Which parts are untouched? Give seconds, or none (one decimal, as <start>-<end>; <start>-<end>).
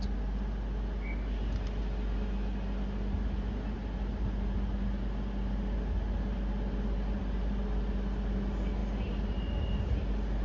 0.0-10.4